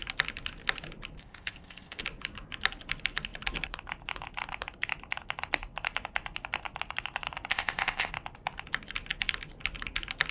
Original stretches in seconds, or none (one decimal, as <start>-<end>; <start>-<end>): 0.0-1.2; 2.0-7.5; 8.1-10.3